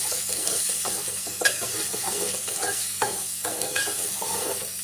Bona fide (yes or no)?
no